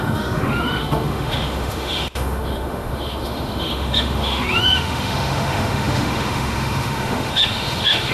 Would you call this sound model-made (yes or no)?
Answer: yes